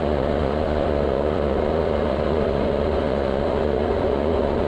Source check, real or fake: fake